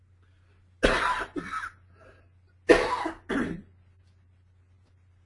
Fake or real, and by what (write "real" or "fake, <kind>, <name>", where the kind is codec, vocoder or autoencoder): real